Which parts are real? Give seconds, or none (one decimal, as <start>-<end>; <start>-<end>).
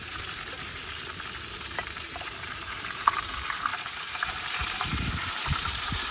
0.8-1.5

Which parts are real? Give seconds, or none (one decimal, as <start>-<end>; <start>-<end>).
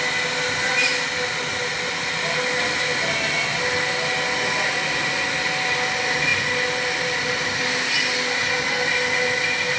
0.0-9.8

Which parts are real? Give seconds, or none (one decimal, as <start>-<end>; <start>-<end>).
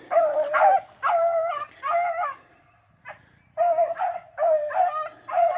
0.0-5.6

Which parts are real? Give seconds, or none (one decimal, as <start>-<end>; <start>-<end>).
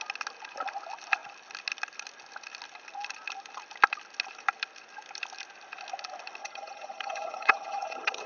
0.0-6.4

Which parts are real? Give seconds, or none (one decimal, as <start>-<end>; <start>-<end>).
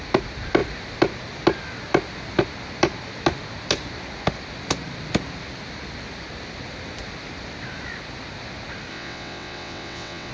0.0-8.9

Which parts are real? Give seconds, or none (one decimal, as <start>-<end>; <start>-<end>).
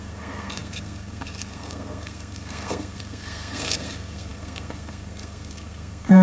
none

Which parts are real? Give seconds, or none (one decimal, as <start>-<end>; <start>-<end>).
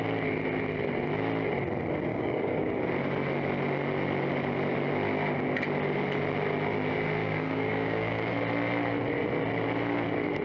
0.0-2.1; 2.8-7.2; 8.3-10.4